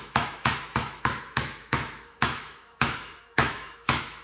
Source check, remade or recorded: remade